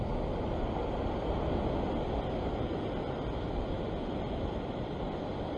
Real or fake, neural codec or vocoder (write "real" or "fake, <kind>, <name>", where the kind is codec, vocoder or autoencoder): real